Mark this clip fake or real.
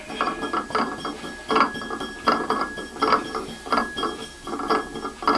real